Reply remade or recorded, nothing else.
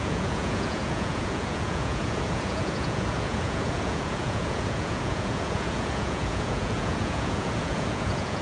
remade